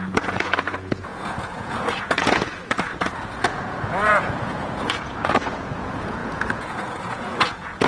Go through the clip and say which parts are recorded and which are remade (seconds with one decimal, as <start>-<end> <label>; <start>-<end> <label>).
0.0-7.9 remade